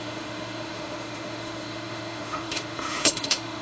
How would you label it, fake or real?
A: fake